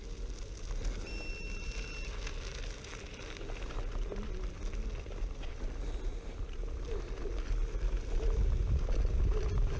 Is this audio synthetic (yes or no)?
no